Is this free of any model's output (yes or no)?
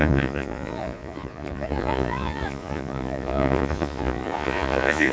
no